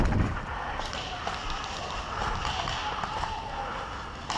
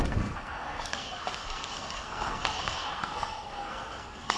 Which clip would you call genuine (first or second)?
first